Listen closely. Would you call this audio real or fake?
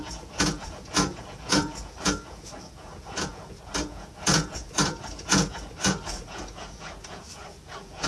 fake